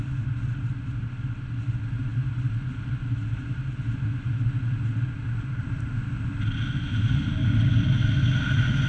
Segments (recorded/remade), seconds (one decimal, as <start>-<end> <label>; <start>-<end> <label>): 0.0-8.9 recorded